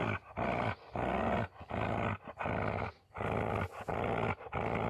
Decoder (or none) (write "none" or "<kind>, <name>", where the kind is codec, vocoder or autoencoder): none